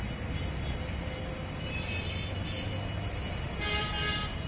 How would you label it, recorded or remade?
recorded